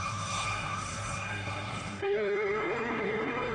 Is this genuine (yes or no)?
no